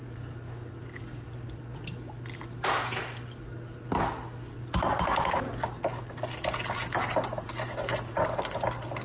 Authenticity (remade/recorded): recorded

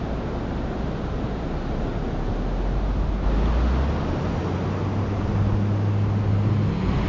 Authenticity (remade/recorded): recorded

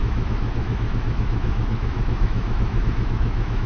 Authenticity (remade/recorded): remade